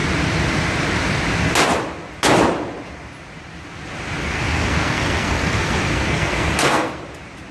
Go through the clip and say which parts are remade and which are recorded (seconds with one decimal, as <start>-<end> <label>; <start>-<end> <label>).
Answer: 0.0-4.2 recorded; 4.2-7.0 remade; 7.0-7.5 recorded